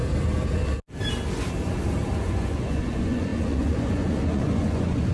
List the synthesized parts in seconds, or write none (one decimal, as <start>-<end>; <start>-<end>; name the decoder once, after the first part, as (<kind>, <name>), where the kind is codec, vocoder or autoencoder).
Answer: 2.2-5.1 (vocoder, Vocos)

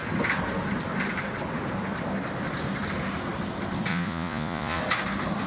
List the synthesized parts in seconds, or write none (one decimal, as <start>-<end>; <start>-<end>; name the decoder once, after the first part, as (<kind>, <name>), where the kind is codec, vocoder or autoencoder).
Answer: 3.9-4.8 (vocoder, Vocos)

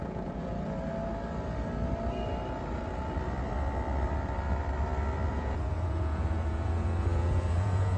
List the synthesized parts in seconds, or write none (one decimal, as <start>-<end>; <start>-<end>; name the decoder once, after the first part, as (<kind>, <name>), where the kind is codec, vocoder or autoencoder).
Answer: 0.0-0.5 (vocoder, Vocos); 5.3-8.0

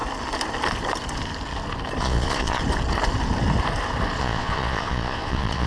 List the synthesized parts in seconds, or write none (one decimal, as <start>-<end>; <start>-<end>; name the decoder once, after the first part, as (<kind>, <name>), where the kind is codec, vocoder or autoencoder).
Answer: 2.0-2.6 (vocoder, Vocos); 4.2-5.7

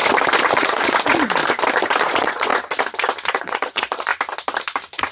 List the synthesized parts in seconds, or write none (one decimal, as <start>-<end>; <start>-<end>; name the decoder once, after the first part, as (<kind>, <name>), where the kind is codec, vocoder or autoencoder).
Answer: 0.5-1.4 (vocoder, Vocos); 2.0-2.5; 3.3-4.1

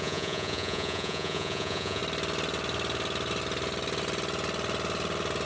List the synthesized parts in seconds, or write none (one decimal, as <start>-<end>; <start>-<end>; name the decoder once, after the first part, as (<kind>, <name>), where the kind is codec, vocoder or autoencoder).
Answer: 0.0-2.0 (vocoder, Vocos)

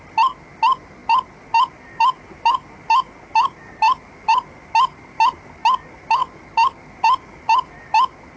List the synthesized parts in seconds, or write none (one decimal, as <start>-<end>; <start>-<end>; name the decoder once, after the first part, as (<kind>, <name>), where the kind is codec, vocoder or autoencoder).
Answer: none

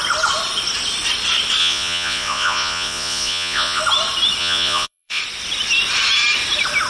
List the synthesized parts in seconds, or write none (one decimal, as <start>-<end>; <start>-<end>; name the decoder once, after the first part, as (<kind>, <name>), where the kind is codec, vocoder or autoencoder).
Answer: 1.6-3.8 (vocoder, Vocos); 4.4-5.2